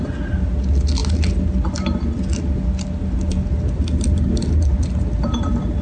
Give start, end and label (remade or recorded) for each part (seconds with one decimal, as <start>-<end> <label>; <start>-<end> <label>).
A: 0.0-5.8 recorded